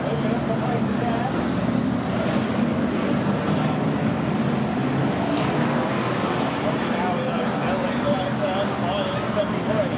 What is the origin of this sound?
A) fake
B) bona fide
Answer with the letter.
B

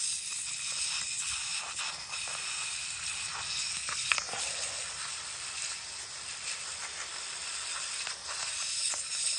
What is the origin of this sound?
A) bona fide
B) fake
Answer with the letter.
A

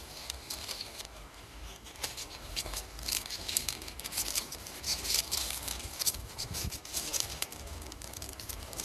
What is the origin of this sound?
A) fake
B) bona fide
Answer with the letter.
A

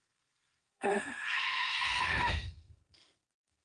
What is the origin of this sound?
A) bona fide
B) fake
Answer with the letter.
B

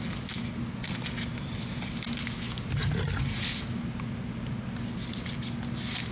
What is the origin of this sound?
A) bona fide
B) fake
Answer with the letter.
A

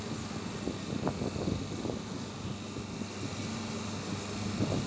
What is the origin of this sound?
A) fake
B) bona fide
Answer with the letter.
B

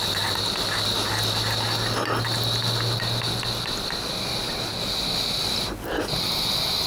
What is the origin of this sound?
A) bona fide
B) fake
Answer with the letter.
A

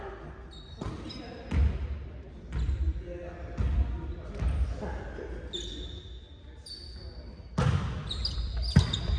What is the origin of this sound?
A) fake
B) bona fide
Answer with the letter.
B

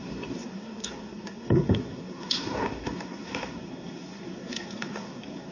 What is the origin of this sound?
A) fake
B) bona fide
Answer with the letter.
A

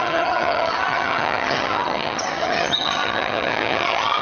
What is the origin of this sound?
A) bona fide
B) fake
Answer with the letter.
B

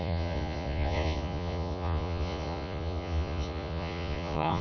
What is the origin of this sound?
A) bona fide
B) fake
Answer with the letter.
B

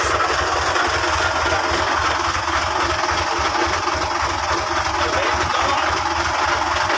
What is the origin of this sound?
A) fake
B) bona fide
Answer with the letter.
B